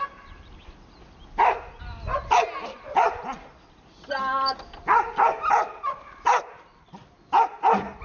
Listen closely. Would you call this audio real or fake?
real